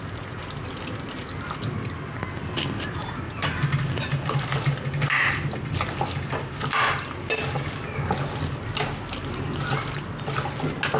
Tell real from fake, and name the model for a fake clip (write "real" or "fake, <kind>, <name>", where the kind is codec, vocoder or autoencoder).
real